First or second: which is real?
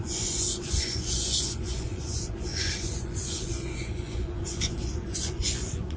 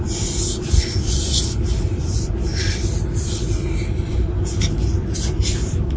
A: second